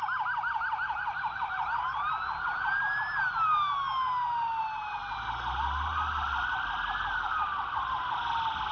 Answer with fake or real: real